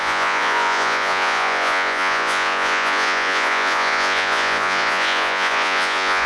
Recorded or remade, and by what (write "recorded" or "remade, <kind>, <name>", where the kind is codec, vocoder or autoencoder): remade, vocoder, Vocos